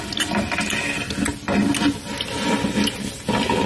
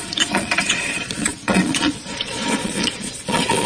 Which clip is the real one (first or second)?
first